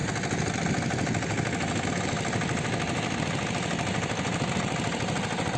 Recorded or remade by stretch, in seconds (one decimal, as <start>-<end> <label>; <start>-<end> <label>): 0.0-5.6 recorded